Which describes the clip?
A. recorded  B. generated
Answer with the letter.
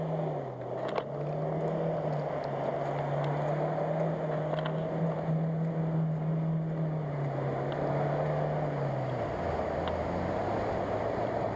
A